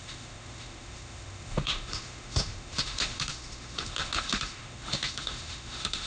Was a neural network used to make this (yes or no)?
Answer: yes